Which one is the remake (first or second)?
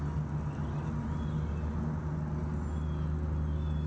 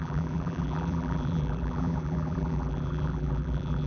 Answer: second